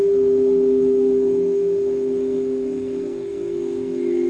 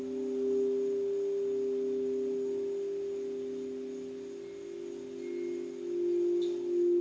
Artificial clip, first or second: first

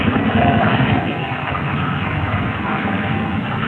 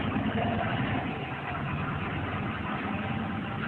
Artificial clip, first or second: first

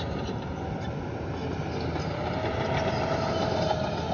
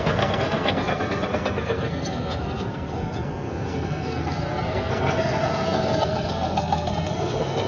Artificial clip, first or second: second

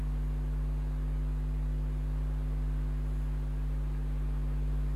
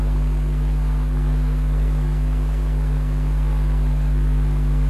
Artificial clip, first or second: second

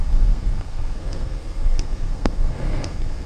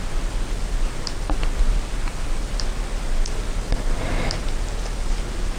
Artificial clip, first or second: first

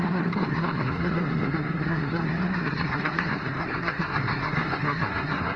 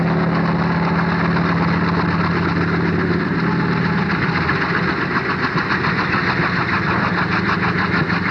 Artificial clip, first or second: first